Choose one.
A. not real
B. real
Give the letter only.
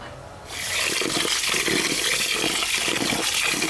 B